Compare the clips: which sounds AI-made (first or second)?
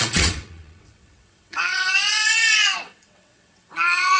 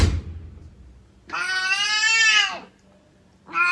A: first